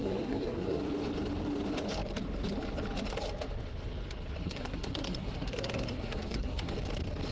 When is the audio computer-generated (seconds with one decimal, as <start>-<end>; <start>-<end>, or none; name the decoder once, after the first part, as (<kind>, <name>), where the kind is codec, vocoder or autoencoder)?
0.0-0.8 (codec, SNAC); 4.4-6.7